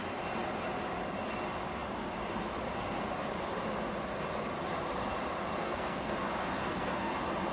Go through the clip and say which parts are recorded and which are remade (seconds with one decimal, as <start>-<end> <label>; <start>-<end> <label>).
0.0-5.6 recorded; 5.6-6.1 remade; 6.1-6.6 recorded; 6.6-7.1 remade; 7.1-7.5 recorded